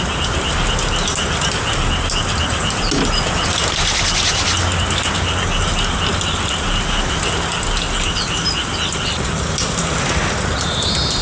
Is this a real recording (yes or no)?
yes